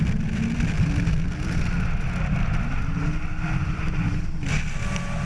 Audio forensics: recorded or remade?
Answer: recorded